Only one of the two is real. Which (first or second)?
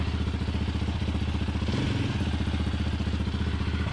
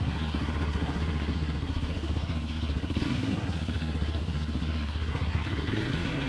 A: first